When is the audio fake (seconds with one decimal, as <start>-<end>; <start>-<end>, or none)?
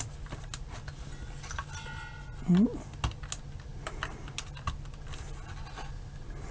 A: none